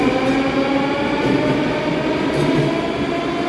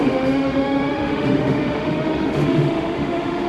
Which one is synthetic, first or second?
second